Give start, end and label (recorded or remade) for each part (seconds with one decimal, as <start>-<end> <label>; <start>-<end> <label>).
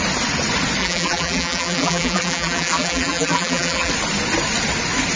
0.0-0.8 recorded; 0.8-3.9 remade; 3.9-5.2 recorded